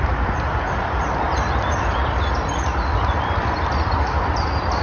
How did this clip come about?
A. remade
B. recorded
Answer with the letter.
A